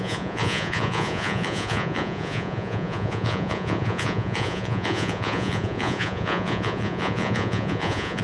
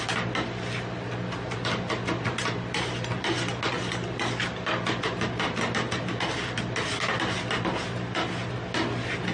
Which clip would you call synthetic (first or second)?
first